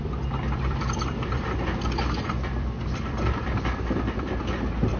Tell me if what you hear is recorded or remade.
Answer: remade